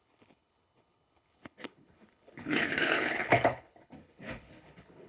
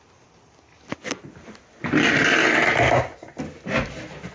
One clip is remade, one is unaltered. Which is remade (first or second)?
first